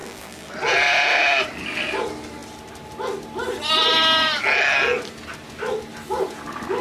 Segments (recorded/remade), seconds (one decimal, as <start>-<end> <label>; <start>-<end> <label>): 0.0-0.5 remade; 0.5-6.8 recorded